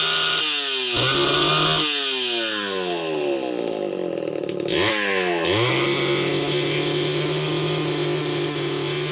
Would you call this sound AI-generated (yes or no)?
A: no